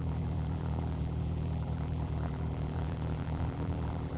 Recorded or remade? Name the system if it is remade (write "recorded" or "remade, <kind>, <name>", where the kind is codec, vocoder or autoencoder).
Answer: remade, vocoder, BigVGAN v2